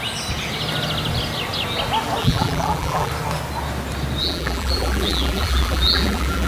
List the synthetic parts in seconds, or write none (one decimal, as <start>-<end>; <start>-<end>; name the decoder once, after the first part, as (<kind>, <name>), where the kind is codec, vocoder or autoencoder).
2.2-3.1 (vocoder, BigVGAN v2); 4.2-6.5